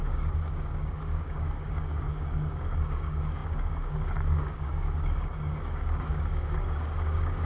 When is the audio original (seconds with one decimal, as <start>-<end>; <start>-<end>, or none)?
none

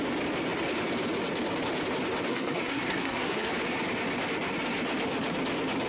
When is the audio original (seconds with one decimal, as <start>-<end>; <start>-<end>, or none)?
0.0-2.3; 3.5-5.9

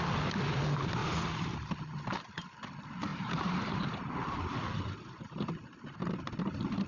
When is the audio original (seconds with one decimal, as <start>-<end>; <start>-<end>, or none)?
0.0-1.0; 1.7-3.1; 4.1-6.9

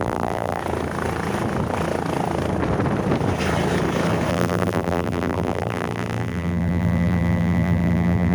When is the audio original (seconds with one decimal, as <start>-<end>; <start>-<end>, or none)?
0.6-4.3

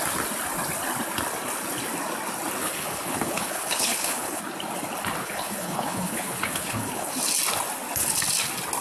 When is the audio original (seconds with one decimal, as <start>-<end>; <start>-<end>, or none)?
0.0-2.6; 4.4-5.2; 7.2-8.8

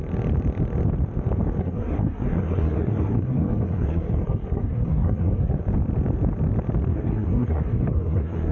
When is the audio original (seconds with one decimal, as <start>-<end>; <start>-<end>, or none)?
0.0-1.6; 5.6-6.9